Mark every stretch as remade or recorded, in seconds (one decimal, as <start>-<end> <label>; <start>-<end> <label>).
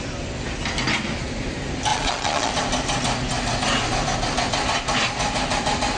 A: 0.0-1.9 recorded; 1.9-2.5 remade; 2.5-6.0 recorded